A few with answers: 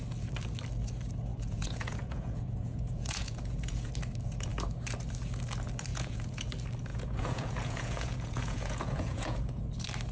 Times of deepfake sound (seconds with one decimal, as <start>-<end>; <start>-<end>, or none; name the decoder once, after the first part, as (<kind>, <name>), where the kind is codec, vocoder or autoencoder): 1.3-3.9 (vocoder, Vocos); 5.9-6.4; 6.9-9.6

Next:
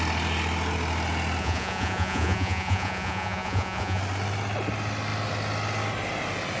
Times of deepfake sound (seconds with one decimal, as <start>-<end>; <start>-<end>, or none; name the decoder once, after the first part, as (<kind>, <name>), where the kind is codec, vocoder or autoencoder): 1.4-4.0 (vocoder, Vocos)

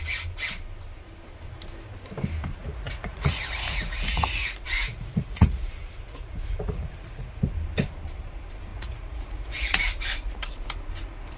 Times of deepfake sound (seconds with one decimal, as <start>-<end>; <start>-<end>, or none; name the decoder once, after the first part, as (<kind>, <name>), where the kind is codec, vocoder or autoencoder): 2.6-7.4 (vocoder, Vocos); 8.7-9.8

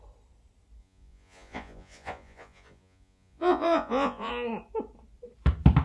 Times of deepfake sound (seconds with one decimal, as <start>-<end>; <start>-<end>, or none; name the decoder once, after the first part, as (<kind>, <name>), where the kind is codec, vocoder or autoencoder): 0.8-4.3 (vocoder, Vocos)